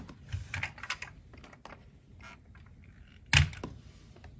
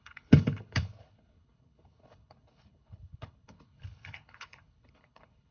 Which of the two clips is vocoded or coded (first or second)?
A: second